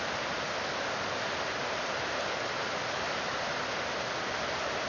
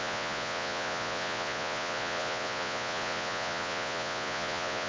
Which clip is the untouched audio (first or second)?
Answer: first